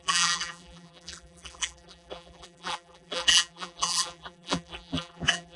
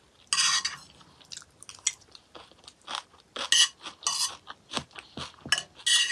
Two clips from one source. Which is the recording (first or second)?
second